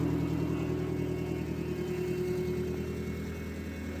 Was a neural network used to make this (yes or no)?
no